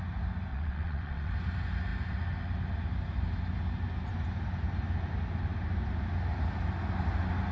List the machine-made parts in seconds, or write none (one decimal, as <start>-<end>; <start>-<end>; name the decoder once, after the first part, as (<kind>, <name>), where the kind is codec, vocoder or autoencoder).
0.5-1.3 (vocoder, WaveNeXt)